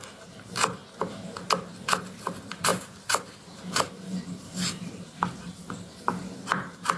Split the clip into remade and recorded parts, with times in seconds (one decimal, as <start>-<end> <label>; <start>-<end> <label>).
0.0-0.8 remade; 0.8-2.0 recorded; 2.0-7.0 remade

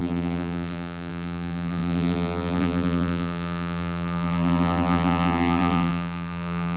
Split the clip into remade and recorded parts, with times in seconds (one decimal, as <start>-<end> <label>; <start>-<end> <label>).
0.0-6.8 remade